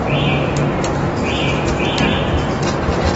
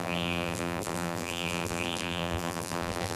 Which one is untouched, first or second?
first